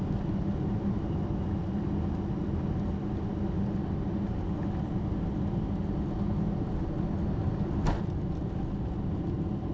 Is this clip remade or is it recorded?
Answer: recorded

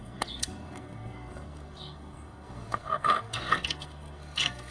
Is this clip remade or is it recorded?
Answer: remade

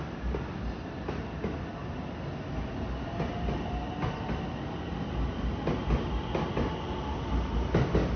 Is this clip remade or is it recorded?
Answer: recorded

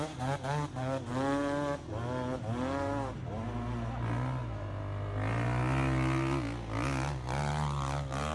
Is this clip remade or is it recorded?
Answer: recorded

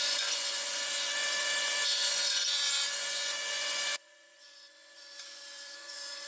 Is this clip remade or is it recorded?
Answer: remade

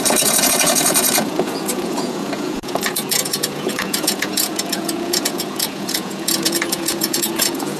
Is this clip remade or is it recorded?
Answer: remade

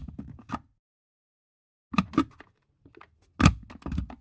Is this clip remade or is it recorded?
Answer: recorded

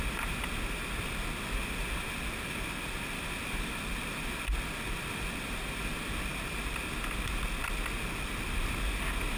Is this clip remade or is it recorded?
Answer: recorded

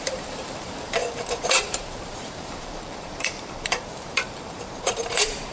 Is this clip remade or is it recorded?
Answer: remade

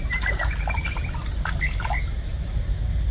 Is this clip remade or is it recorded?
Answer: recorded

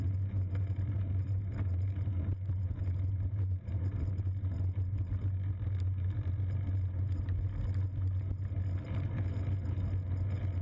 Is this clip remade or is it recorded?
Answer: recorded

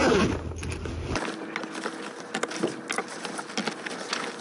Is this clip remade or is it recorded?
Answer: recorded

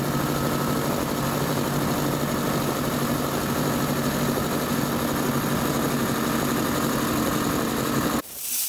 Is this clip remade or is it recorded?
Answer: recorded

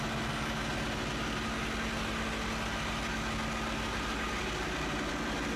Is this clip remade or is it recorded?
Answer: recorded